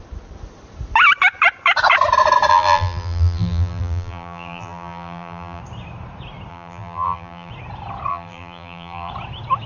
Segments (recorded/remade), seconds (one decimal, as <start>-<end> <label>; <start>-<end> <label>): 0.0-2.5 recorded; 2.5-5.6 remade; 5.6-6.5 recorded; 6.5-7.5 remade; 7.5-8.1 recorded; 8.1-9.1 remade; 9.1-9.7 recorded